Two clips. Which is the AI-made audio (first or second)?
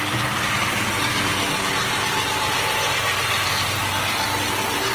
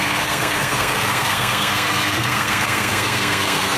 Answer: second